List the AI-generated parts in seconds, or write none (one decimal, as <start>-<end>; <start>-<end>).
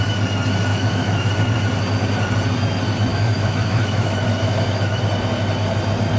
0.7-1.3; 3.1-5.0